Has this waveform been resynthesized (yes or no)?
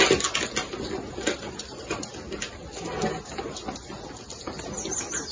no